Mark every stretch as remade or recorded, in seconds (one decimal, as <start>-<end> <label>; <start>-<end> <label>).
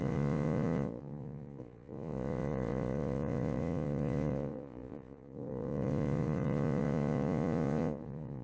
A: 0.0-8.4 remade